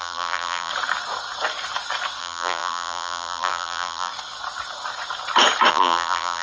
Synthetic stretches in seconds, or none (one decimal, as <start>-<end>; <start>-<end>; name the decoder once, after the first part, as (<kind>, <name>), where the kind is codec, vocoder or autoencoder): 0.0-0.7 (vocoder, BigVGAN v2); 2.2-4.1; 5.7-6.4